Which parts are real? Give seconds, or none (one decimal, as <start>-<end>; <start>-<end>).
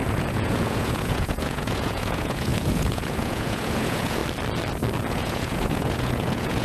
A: 4.2-5.1